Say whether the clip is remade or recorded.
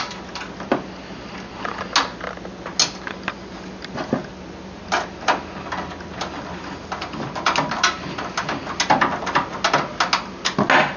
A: recorded